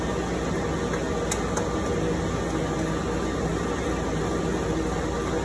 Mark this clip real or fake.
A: real